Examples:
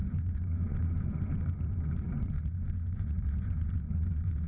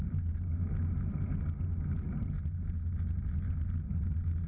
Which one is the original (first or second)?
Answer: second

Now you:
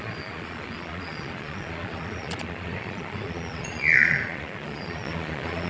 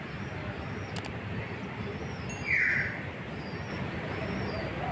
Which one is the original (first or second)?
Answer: second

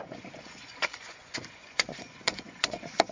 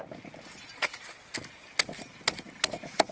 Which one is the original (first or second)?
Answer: second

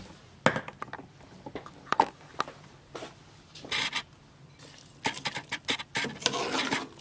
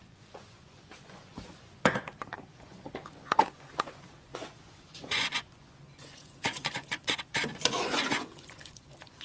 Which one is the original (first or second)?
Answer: first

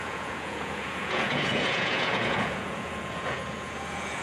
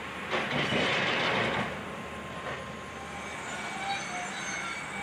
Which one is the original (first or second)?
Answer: second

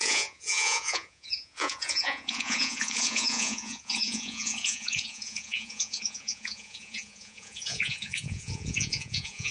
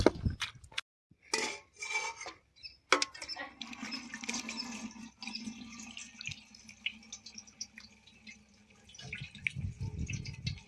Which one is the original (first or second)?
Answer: second